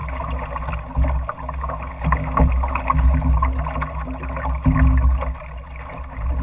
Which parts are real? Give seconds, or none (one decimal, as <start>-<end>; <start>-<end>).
0.0-6.4